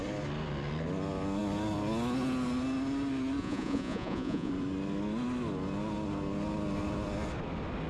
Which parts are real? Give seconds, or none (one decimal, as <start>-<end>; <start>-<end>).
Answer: 0.0-3.4; 4.5-7.9